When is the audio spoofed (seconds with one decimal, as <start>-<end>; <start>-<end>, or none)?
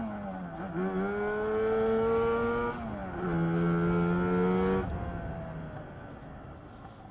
none